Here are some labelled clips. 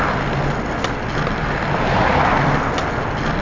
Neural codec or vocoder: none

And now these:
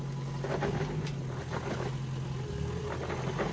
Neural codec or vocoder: none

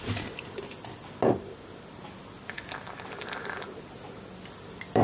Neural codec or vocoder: none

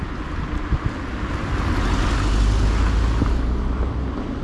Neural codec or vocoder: none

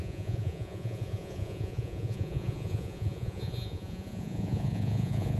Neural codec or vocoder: vocoder, Vocos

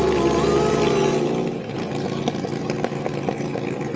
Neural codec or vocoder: none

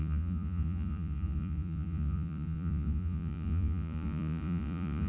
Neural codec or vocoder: vocoder, Vocos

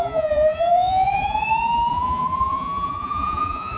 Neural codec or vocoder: vocoder, Vocos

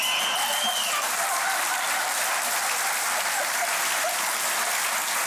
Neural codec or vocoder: none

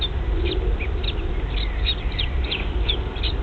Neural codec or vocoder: none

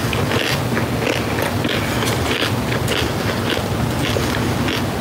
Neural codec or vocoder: none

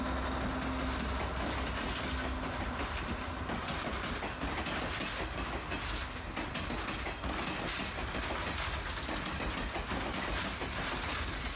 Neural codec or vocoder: none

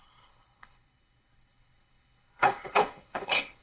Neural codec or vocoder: codec, HILCodec